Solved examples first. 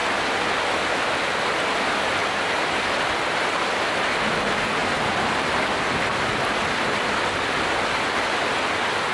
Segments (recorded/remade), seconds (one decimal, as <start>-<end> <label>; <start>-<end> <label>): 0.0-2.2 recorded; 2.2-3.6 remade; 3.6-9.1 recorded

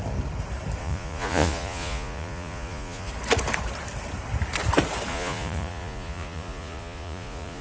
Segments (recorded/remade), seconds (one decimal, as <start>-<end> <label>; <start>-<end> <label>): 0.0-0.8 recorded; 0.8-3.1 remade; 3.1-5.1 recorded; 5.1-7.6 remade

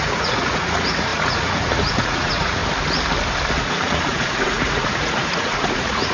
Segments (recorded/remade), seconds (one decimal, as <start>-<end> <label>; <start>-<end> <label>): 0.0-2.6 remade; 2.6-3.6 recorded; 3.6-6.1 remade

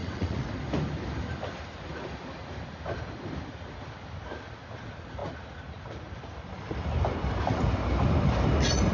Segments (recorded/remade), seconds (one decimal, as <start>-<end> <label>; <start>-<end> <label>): 0.0-0.5 remade; 0.5-8.9 recorded

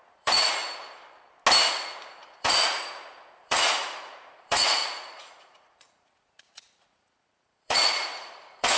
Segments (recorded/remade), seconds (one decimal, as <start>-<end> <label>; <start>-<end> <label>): 0.0-0.6 remade; 0.6-1.7 recorded; 1.7-8.8 remade